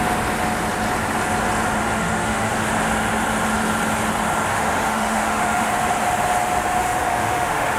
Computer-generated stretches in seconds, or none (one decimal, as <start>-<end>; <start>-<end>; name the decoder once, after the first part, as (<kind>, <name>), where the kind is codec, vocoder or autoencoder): 1.8-2.5 (autoencoder, DAC-VAE); 4.5-5.7; 6.8-7.8